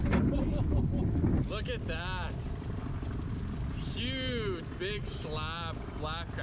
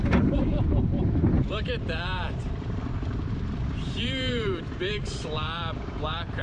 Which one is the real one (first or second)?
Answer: first